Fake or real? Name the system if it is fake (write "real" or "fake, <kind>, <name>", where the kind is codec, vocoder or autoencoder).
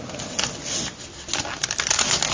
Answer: real